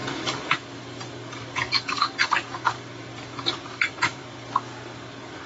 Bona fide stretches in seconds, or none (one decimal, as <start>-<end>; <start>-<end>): none